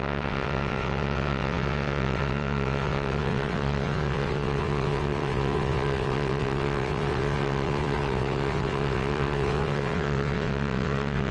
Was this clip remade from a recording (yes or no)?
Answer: yes